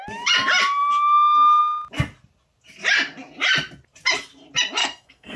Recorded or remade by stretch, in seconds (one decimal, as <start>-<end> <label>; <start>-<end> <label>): 0.0-4.8 recorded; 4.8-5.4 remade